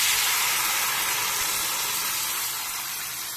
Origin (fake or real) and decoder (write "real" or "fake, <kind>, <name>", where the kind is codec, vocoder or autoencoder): real